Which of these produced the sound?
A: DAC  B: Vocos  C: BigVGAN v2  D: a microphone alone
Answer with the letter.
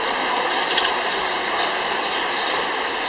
C